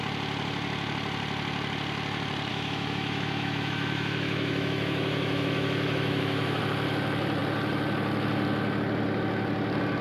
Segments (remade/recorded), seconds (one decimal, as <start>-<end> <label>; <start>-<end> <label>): 0.0-2.5 recorded; 2.5-6.6 remade; 6.6-10.0 recorded